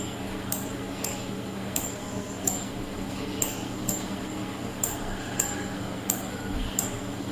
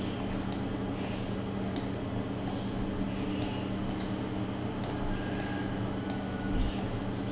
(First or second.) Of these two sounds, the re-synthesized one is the first